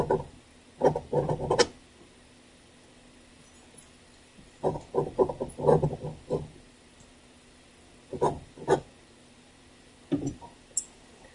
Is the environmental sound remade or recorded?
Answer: recorded